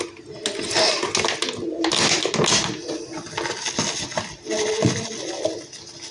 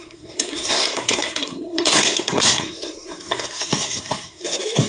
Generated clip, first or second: second